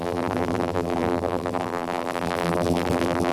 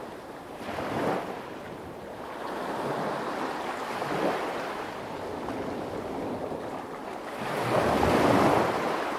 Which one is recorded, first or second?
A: second